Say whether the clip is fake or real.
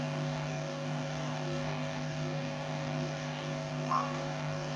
fake